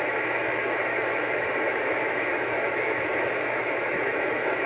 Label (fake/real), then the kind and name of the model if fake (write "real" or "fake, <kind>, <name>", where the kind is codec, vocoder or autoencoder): fake, autoencoder, DAC-VAE